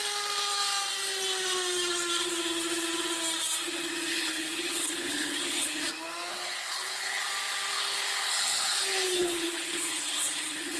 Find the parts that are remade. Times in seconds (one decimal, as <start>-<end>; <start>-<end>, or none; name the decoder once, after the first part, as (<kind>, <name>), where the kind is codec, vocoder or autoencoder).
4.1-5.8 (codec, HILCodec); 6.3-7.3; 7.7-10.8